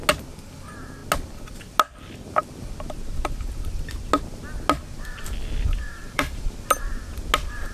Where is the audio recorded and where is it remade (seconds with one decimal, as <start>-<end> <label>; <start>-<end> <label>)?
0.0-6.0 recorded; 6.0-6.5 remade; 6.5-7.7 recorded